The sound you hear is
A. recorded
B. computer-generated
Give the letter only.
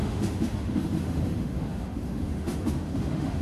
B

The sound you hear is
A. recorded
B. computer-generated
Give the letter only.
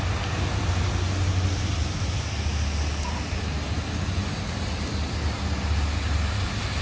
A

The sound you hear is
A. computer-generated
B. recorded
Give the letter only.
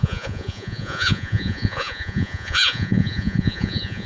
A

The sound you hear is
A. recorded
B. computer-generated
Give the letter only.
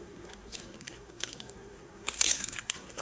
B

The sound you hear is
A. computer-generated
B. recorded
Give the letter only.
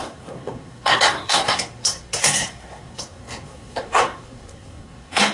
A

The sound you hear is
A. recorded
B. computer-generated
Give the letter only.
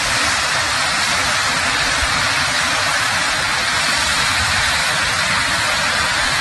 B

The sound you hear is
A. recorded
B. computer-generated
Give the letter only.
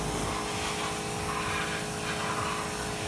A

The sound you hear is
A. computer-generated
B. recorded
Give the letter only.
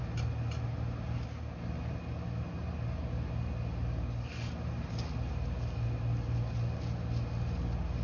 B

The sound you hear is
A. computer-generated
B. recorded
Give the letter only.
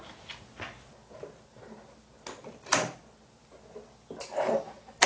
B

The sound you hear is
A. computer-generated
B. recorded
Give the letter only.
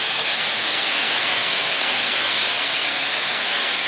A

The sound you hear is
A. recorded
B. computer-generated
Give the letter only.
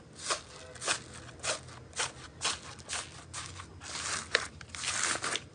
A